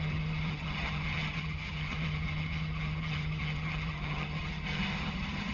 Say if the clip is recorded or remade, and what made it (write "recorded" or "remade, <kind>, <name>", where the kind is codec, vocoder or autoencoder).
remade, vocoder, HiFi-GAN